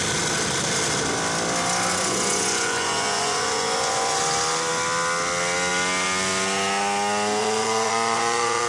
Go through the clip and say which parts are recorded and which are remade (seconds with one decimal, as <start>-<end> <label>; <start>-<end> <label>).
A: 0.0-1.9 recorded; 1.9-4.2 remade; 4.2-7.4 recorded; 7.4-8.7 remade